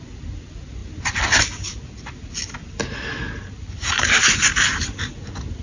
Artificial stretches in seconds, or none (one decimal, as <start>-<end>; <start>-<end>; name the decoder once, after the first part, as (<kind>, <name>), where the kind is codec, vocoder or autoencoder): none